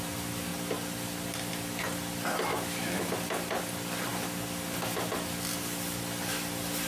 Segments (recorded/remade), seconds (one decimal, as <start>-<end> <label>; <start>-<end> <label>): 0.0-2.5 recorded; 2.5-3.1 remade; 3.1-6.9 recorded